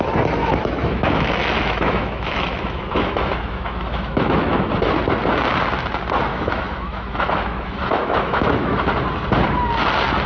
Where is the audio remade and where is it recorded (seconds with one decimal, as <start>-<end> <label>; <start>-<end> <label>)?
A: 0.0-0.4 recorded; 0.4-4.7 remade; 4.7-6.3 recorded; 6.3-8.9 remade; 8.9-10.3 recorded